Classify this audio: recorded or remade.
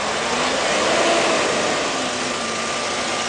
recorded